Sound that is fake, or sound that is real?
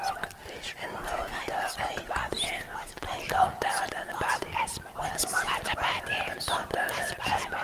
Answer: real